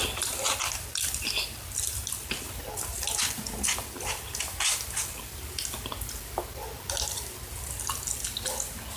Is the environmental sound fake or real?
real